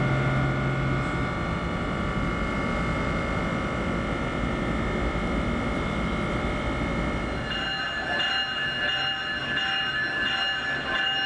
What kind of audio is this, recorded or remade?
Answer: recorded